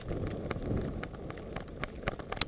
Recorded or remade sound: recorded